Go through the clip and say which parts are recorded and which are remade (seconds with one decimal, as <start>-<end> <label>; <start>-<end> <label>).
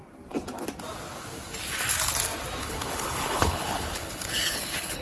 0.0-2.6 recorded; 2.6-5.0 remade